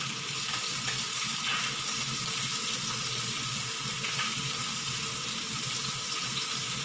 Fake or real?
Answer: real